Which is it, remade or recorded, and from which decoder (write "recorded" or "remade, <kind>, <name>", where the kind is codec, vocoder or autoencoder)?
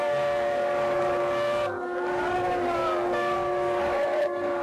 remade, codec, DAC